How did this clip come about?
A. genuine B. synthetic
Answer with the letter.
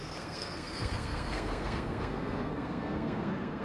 B